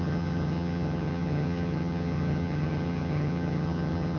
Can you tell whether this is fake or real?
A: fake